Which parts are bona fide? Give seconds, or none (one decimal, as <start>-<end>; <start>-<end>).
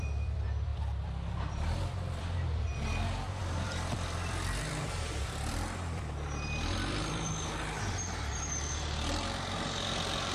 none